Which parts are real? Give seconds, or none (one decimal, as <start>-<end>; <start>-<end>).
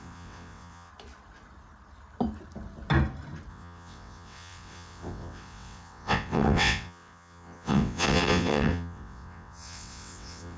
0.9-3.5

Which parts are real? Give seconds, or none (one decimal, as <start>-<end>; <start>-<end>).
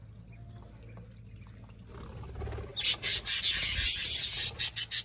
0.0-5.0